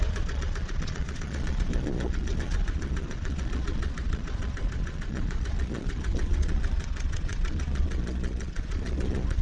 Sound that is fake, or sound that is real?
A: fake